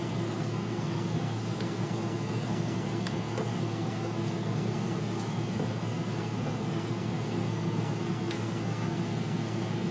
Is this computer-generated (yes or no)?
yes